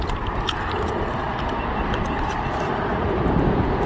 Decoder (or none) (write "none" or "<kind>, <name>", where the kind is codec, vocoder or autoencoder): vocoder, BigVGAN v2